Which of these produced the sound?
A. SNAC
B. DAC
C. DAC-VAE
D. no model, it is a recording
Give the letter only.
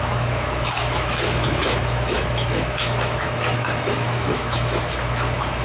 C